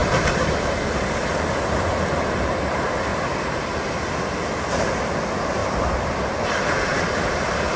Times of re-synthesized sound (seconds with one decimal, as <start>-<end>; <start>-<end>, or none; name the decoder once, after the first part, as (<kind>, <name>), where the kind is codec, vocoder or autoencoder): 0.0-0.6 (vocoder, BigVGAN v2); 3.1-3.6; 5.6-6.3